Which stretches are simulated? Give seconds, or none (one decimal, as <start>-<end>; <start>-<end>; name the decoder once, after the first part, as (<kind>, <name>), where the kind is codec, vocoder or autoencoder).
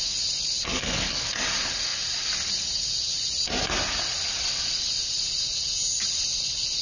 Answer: 0.7-1.3 (codec, DAC)